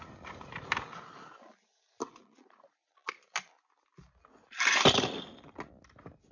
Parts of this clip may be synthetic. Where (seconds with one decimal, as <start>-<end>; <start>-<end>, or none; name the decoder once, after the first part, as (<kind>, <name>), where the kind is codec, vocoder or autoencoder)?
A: none